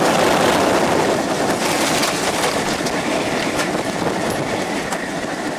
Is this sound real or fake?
real